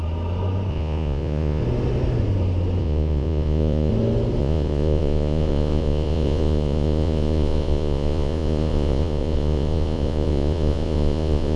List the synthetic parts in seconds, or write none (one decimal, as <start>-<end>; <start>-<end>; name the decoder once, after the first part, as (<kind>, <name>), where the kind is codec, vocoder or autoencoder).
0.7-1.6 (vocoder, Vocos); 2.8-3.9; 4.4-11.6